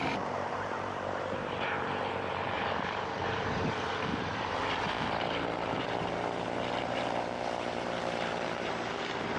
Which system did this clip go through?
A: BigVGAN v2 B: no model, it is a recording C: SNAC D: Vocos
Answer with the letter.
A